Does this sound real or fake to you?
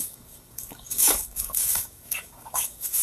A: fake